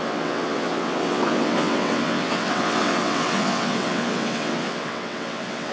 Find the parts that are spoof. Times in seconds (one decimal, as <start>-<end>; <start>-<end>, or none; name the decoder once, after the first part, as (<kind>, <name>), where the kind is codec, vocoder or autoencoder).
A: 0.0-5.7 (vocoder, WaveNeXt)